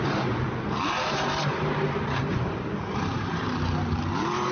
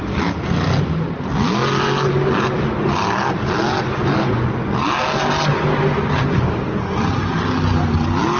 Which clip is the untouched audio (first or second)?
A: second